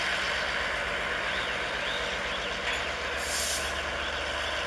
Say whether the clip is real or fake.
real